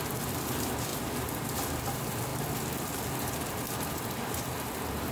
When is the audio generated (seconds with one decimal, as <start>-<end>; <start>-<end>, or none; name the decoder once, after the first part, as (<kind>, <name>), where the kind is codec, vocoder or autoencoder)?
0.0-0.9 (vocoder, BigVGAN v2); 1.8-2.3; 3.9-5.1